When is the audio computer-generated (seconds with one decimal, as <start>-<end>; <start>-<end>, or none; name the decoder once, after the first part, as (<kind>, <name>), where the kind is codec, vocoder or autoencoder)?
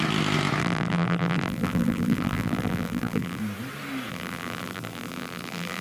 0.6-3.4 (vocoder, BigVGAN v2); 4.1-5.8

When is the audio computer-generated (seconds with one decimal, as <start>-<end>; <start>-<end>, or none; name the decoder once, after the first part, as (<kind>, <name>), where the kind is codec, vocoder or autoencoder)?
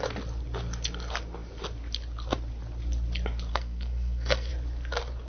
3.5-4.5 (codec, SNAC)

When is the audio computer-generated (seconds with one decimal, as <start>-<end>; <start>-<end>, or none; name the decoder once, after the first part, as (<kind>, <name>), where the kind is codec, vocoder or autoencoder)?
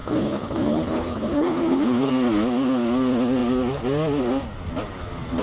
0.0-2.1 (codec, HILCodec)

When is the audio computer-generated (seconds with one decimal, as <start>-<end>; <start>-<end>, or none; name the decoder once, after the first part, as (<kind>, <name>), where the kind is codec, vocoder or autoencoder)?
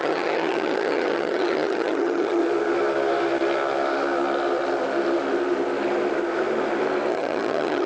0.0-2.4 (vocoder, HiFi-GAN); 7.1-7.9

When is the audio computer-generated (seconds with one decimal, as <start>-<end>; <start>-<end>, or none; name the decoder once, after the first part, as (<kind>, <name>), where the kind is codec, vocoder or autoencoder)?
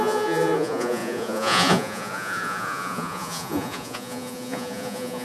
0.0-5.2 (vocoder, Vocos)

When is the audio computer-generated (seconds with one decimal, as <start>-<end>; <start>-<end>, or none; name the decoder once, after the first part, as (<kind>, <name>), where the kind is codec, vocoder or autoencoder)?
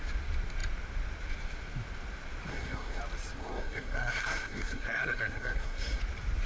2.5-3.0 (codec, SNAC); 3.4-6.0